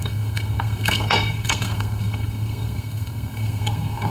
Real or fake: fake